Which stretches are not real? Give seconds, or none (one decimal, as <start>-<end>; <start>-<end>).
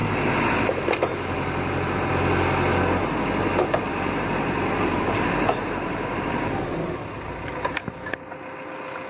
3.9-7.9